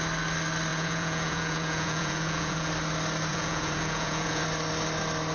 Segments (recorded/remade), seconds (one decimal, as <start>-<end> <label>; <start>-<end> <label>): 0.0-0.7 recorded; 0.7-2.7 remade; 2.7-3.3 recorded; 3.3-4.4 remade; 4.4-5.3 recorded